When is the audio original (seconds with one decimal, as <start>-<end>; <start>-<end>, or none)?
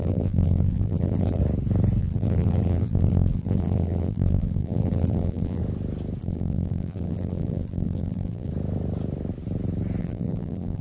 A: 1.4-2.0; 5.6-6.2; 8.5-10.0